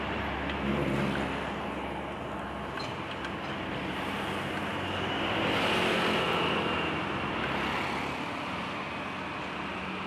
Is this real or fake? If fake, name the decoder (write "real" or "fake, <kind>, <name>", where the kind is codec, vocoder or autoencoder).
real